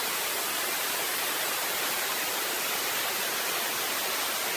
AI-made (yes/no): no